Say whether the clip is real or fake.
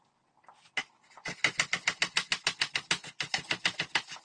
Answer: real